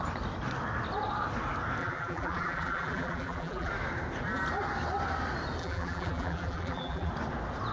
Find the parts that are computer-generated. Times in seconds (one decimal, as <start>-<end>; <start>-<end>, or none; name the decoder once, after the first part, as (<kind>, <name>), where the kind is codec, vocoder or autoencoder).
1.8-3.7 (vocoder, BigVGAN v2); 5.6-7.1